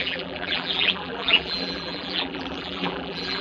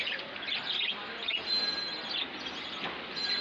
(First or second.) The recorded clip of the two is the second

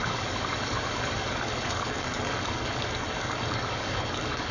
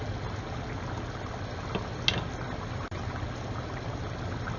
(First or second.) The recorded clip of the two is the second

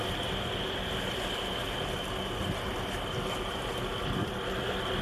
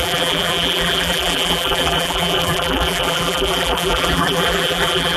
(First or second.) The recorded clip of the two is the first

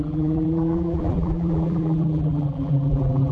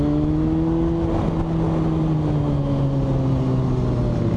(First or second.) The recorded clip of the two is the second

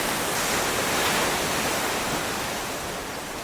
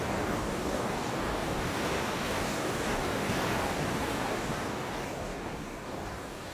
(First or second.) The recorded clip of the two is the first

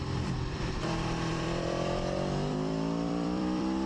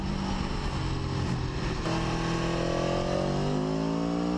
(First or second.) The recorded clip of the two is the second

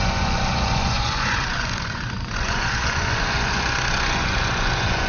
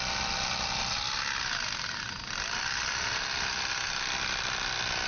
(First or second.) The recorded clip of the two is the second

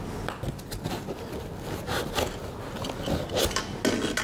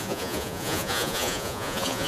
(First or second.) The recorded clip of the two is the first